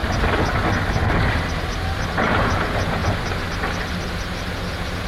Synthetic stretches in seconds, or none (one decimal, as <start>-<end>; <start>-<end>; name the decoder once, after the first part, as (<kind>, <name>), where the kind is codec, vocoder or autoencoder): 2.3-3.0 (vocoder, Vocos); 4.5-5.1